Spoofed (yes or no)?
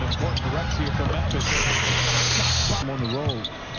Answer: no